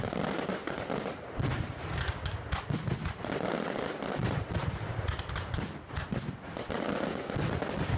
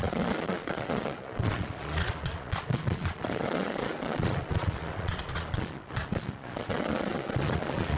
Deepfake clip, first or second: second